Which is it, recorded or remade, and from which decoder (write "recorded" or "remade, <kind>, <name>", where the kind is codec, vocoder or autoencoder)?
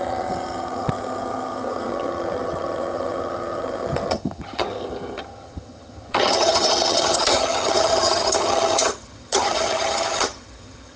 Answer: remade, vocoder, HiFi-GAN